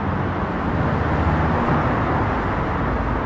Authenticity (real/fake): real